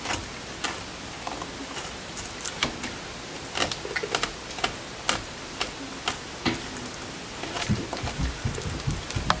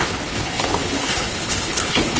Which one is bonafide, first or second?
first